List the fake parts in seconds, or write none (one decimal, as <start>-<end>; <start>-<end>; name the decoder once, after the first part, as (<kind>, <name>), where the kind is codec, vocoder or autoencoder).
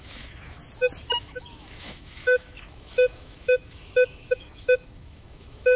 0.0-0.6 (autoencoder, DAC-VAE); 1.2-5.8